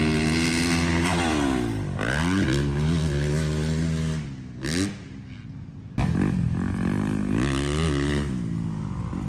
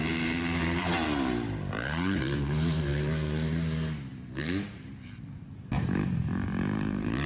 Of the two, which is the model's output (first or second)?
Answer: second